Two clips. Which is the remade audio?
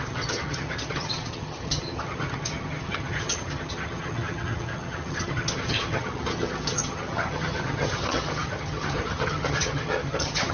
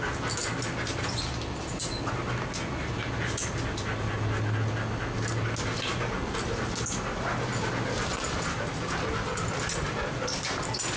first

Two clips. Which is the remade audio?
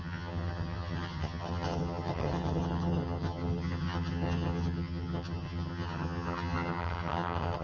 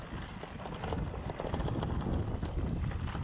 first